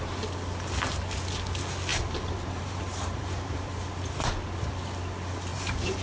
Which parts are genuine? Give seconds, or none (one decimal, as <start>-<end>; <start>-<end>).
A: 0.0-1.9; 3.8-5.5